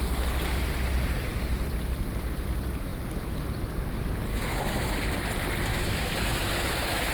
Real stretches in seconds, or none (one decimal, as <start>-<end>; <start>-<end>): 0.0-4.3; 5.2-5.7